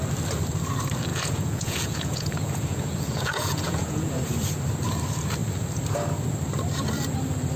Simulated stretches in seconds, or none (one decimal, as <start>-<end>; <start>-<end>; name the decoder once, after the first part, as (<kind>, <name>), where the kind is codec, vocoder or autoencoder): 1.1-4.1 (vocoder, Vocos)